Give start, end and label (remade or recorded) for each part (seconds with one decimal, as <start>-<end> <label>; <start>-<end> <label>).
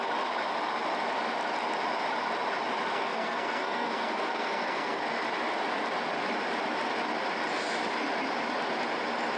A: 0.0-2.9 recorded; 2.9-5.0 remade; 5.0-9.4 recorded